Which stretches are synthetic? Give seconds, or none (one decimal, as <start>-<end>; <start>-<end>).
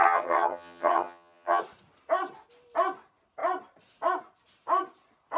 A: 0.0-1.6